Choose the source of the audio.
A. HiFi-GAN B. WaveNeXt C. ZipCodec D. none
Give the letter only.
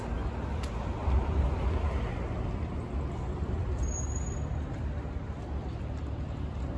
D